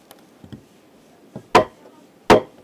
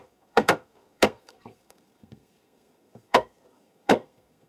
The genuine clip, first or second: first